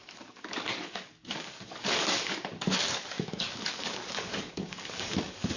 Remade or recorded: remade